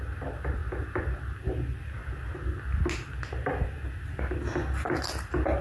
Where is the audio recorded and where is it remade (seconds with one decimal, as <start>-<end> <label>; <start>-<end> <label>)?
0.0-5.6 recorded